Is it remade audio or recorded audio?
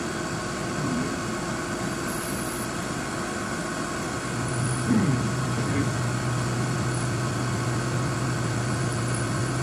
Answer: recorded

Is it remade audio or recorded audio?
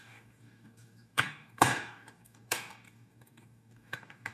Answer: remade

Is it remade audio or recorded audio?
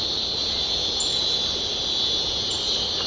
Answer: recorded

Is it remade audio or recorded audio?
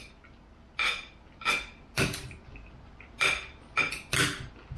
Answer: recorded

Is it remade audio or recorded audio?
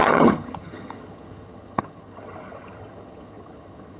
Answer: remade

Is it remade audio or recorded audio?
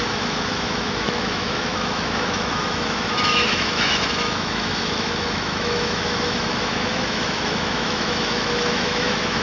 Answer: remade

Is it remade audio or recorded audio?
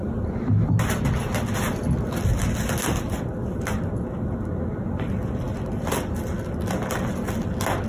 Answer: recorded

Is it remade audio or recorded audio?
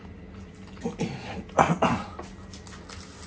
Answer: recorded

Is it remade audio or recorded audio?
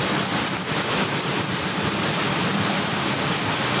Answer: recorded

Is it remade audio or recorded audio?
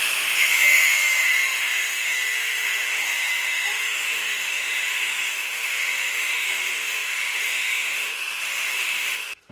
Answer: remade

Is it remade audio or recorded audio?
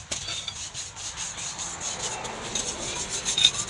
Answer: recorded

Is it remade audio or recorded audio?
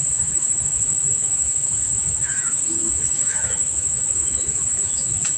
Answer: remade